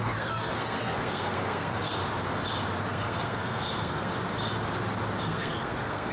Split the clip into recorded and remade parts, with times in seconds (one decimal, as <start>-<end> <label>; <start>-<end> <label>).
0.0-2.0 remade; 2.0-2.9 recorded; 2.9-4.1 remade; 4.1-5.2 recorded; 5.2-6.1 remade